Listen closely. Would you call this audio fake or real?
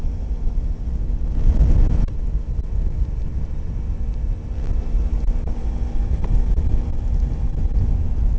real